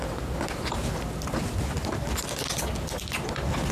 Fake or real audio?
real